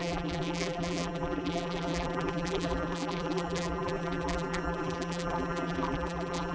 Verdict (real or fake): fake